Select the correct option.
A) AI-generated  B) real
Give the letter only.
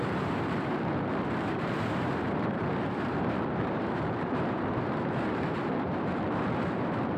A